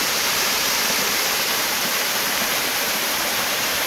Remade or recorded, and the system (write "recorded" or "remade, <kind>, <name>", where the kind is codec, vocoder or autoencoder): remade, vocoder, BigVGAN v2